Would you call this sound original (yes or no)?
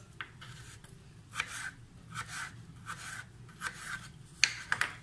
yes